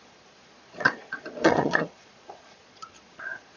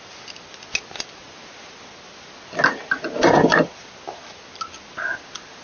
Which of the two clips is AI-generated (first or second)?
first